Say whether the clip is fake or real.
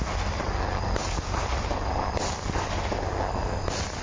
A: real